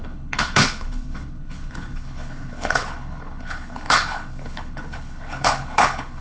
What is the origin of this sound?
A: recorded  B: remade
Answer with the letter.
B